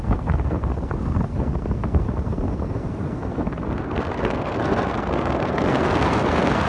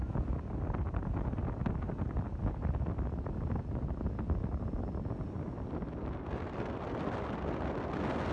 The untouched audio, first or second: second